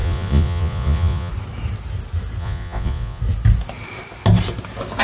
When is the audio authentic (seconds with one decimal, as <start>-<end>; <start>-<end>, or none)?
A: 1.3-2.4; 3.2-5.0